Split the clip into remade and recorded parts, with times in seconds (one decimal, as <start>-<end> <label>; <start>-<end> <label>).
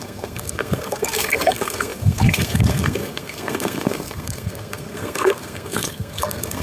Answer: 0.0-6.6 remade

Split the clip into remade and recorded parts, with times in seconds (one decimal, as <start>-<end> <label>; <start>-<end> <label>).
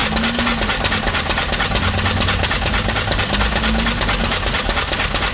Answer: 0.0-5.3 recorded